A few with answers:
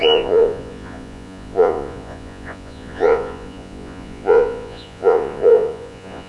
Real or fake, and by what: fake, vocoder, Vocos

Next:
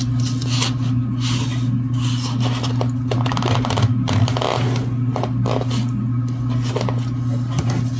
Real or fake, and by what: real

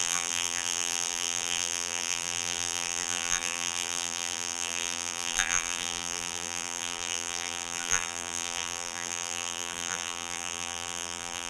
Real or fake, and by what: fake, vocoder, BigVGAN v2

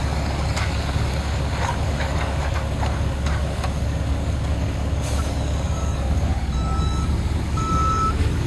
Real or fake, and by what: fake, codec, DAC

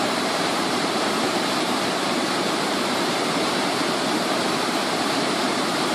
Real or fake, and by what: fake, vocoder, BigVGAN v2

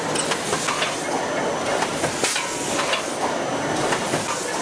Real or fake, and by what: real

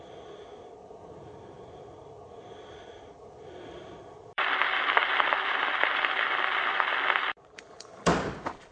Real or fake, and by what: fake, vocoder, BigVGAN v2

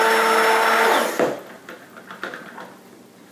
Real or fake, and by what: real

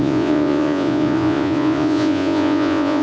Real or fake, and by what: fake, vocoder, Vocos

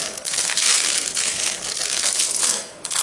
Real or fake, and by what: fake, codec, SNAC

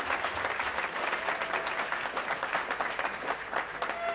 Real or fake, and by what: real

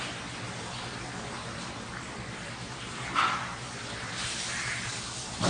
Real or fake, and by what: real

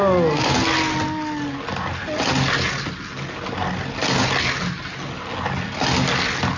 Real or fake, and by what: real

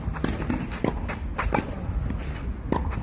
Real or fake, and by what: real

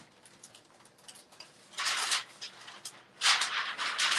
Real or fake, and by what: real